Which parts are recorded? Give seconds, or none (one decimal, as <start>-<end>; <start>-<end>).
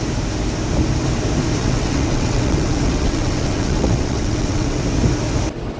0.0-1.6; 4.8-5.8